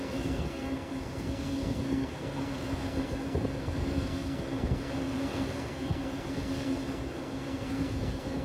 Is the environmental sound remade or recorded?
remade